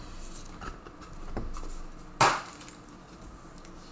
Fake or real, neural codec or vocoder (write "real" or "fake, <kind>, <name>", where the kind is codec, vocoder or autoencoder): real